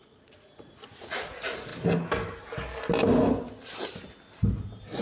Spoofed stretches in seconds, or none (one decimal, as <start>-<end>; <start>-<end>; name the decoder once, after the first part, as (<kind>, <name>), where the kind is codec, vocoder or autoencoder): 0.0-1.7 (vocoder, Vocos)